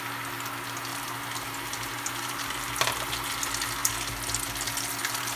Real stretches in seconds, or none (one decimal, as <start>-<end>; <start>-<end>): 0.0-0.9; 3.4-5.4